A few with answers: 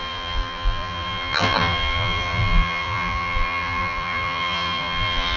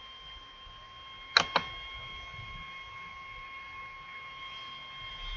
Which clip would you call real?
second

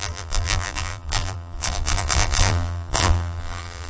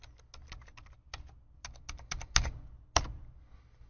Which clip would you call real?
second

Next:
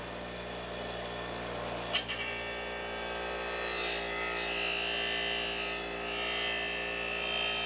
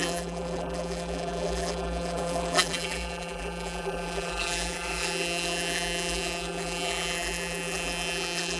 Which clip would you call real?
first